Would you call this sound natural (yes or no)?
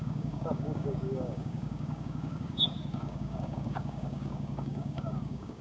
no